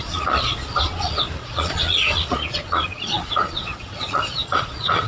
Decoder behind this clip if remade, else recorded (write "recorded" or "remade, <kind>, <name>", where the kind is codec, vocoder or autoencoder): remade, vocoder, Vocos